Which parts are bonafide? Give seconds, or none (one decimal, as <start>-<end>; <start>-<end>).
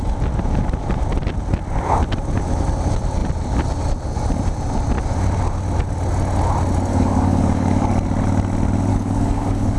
0.0-6.9; 7.9-8.9